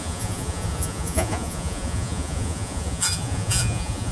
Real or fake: fake